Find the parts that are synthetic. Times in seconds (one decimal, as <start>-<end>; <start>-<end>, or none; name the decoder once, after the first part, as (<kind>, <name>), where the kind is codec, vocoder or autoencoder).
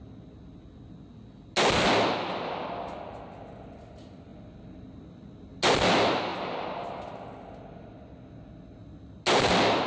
none